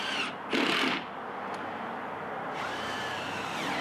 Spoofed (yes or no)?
no